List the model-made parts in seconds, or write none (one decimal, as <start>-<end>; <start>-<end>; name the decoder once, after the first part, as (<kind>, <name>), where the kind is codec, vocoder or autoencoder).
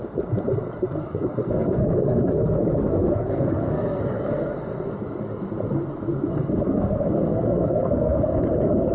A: 1.0-4.9 (codec, SNAC); 6.3-8.4